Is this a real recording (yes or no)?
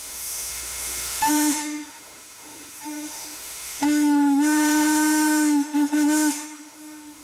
no